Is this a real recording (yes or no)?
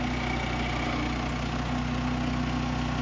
yes